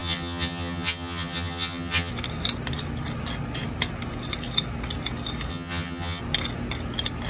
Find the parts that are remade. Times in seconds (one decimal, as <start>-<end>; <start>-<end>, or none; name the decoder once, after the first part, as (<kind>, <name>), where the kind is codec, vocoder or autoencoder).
0.0-2.1 (vocoder, HiFi-GAN); 5.5-6.2